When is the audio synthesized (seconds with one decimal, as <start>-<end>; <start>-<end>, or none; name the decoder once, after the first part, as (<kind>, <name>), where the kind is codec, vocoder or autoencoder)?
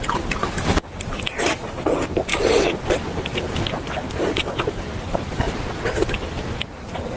2.3-5.7 (vocoder, BigVGAN v2)